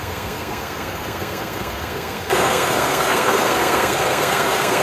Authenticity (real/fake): fake